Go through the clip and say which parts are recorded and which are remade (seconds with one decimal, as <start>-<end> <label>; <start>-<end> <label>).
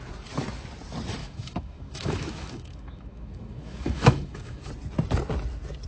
0.0-1.2 recorded; 1.2-4.7 remade; 4.7-5.9 recorded